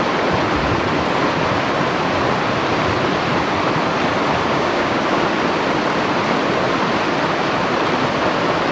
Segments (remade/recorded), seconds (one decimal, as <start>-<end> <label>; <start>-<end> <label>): 0.0-4.5 recorded; 4.5-5.0 remade; 5.0-8.7 recorded

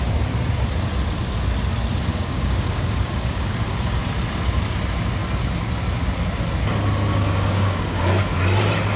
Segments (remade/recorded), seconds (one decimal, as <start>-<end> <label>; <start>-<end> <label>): 0.0-2.1 recorded; 2.1-4.0 remade; 4.0-7.1 recorded; 7.1-8.2 remade; 8.2-9.0 recorded

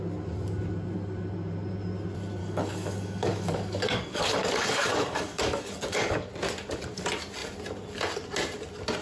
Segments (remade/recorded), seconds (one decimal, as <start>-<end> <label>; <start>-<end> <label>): 0.0-2.4 recorded; 2.4-6.3 remade; 6.3-9.0 recorded